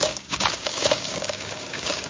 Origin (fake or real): fake